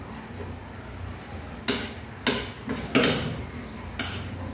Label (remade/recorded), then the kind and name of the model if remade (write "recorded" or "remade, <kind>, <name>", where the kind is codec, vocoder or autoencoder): recorded